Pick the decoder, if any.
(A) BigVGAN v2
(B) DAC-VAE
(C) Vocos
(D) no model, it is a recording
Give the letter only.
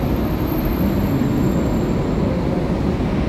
D